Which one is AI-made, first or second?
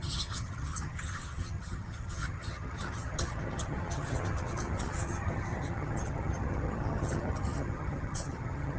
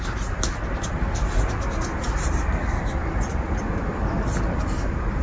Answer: first